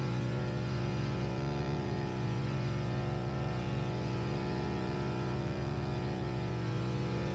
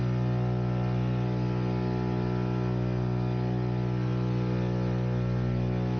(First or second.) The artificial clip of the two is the first